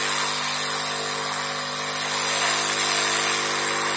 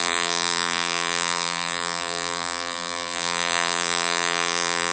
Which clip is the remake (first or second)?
second